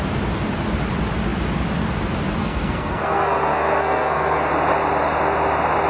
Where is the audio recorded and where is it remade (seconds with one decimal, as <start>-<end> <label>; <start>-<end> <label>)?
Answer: 0.0-2.4 recorded; 2.4-4.5 remade; 4.5-5.9 recorded